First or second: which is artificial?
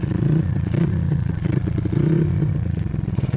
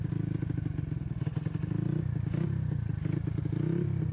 first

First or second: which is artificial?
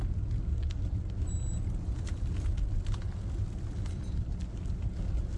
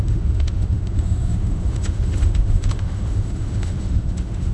second